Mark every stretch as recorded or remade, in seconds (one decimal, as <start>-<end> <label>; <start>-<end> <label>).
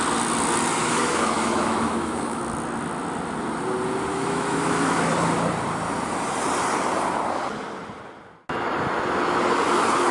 0.0-0.8 recorded; 0.8-2.4 remade; 2.4-4.1 recorded; 4.1-5.1 remade; 5.1-10.1 recorded